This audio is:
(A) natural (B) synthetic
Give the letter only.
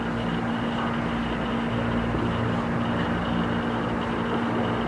A